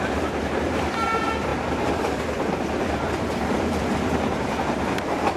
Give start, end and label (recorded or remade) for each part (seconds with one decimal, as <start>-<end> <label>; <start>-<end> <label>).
0.0-5.4 recorded